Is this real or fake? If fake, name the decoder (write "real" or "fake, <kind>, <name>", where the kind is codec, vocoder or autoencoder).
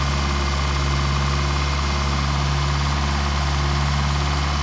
real